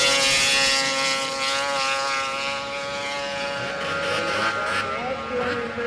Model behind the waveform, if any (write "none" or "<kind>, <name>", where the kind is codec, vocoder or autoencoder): none